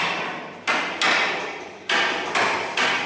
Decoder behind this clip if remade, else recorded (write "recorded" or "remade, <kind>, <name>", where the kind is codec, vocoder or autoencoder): recorded